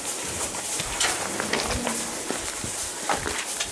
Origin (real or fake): real